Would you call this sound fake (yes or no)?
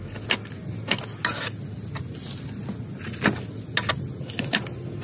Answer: no